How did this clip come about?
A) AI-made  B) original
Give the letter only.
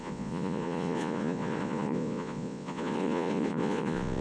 A